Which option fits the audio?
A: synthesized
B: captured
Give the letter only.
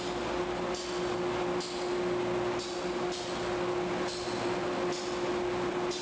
B